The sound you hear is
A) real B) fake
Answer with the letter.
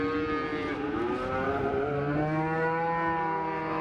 A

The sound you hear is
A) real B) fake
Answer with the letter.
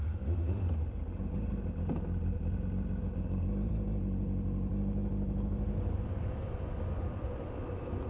A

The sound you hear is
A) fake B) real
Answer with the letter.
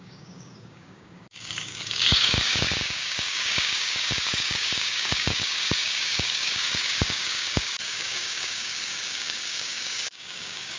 A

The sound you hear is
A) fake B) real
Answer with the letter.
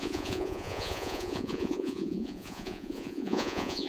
A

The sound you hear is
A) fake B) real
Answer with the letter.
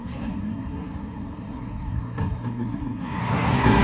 A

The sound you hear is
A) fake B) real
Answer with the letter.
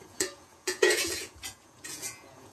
A